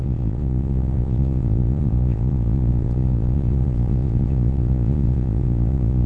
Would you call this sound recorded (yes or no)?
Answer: no